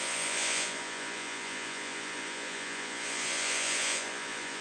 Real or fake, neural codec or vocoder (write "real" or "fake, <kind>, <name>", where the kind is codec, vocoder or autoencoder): fake, vocoder, Vocos